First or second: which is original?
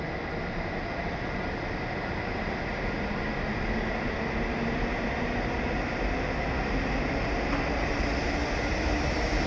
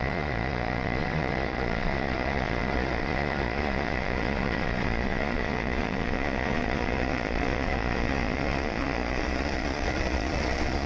first